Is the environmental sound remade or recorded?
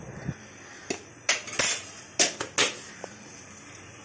recorded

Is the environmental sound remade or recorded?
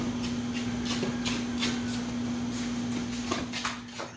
recorded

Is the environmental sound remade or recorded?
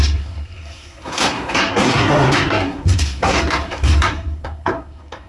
remade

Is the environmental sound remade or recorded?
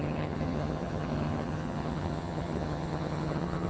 remade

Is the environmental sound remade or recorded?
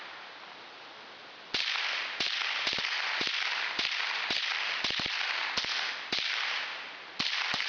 recorded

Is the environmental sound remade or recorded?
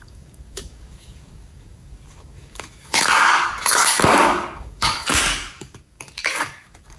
remade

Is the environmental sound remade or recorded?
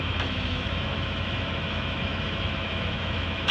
remade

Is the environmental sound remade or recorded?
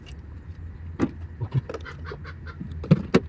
recorded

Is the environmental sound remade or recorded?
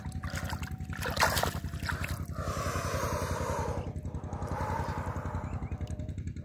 recorded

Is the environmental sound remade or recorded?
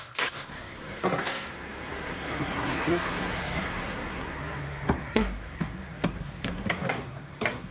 remade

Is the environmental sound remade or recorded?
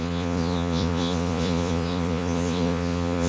remade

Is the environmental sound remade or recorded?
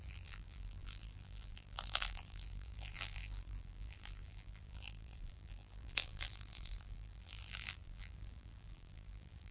remade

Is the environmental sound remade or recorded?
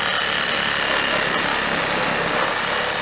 recorded